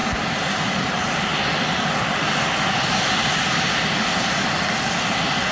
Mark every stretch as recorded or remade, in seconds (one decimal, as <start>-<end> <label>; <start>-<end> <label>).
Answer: 0.0-0.8 recorded; 0.8-1.3 remade; 1.3-4.6 recorded; 4.6-5.5 remade